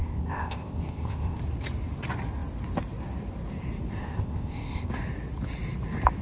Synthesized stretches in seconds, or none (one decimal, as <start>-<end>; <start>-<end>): 0.0-1.4; 4.0-4.9